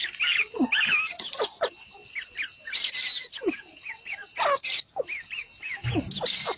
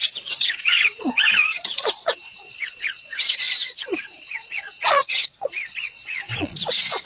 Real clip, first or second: first